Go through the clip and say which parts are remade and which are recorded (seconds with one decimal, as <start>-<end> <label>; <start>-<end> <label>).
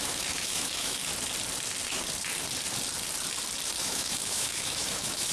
0.0-1.0 remade; 1.0-3.8 recorded; 3.8-5.3 remade